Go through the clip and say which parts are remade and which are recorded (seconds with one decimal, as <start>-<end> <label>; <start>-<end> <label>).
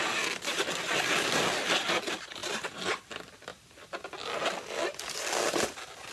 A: 0.0-2.4 recorded; 2.4-3.0 remade; 3.0-6.1 recorded